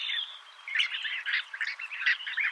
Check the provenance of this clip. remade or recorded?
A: remade